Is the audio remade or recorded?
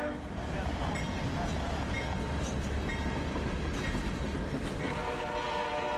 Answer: recorded